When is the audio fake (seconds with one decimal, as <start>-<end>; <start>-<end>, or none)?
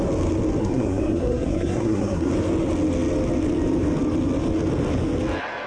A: 0.6-2.3